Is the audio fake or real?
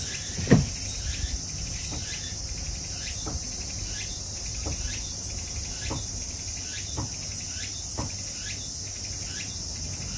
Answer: real